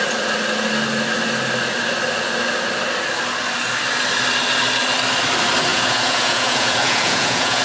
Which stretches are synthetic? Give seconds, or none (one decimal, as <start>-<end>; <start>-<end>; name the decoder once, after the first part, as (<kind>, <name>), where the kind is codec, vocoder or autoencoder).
5.7-7.6 (vocoder, Vocos)